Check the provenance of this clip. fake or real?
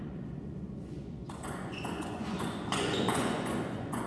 fake